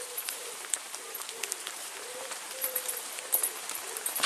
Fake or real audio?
fake